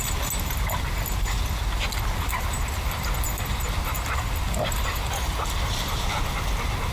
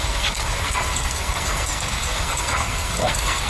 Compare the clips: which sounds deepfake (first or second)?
second